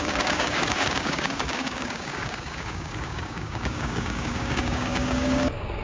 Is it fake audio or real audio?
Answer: fake